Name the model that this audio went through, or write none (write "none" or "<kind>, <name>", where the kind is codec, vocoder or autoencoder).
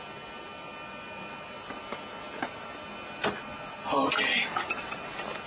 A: none